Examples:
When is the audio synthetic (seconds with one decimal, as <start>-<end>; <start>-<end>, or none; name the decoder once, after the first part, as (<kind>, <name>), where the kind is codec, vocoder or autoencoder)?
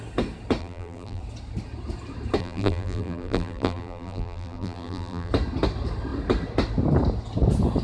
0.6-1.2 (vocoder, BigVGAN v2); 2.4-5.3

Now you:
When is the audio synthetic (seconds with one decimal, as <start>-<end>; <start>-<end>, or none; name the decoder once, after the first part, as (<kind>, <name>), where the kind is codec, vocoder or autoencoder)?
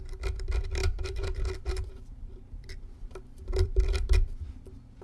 0.8-3.8 (vocoder, BigVGAN v2)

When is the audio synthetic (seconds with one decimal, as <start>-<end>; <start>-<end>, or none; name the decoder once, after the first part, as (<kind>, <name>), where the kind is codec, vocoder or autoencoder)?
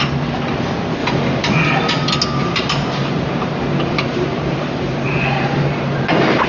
1.0-1.9 (vocoder, BigVGAN v2); 2.4-6.5